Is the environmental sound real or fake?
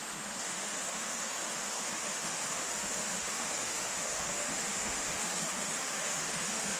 fake